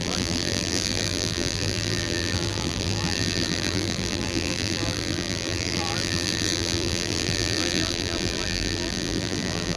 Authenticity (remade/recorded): remade